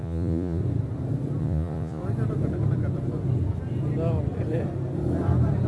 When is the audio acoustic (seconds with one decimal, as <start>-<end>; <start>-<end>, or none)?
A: 0.6-1.4; 2.0-5.7